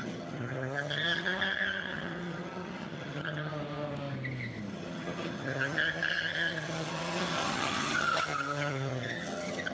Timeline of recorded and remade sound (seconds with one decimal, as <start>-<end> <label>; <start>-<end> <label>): 0.0-3.5 remade; 3.5-4.7 recorded; 4.7-9.7 remade